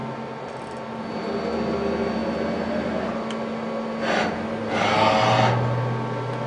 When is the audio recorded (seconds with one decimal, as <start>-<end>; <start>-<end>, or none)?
0.0-6.5